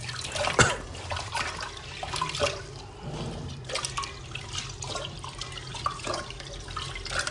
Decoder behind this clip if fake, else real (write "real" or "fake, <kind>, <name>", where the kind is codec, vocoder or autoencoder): fake, vocoder, BigVGAN v2